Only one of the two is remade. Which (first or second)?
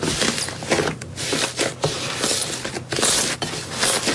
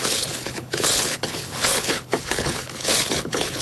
second